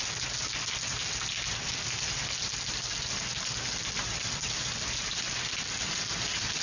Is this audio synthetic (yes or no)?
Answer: no